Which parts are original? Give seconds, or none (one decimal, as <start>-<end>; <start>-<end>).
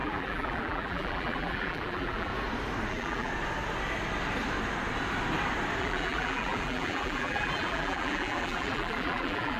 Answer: 2.3-2.9; 3.3-5.8